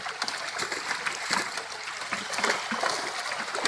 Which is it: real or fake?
real